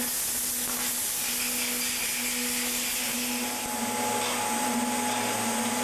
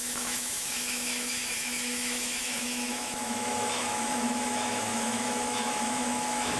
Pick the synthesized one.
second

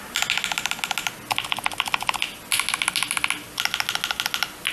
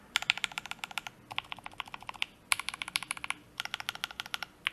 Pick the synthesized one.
second